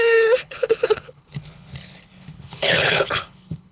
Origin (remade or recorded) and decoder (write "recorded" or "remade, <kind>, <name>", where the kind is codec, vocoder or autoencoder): remade, codec, HILCodec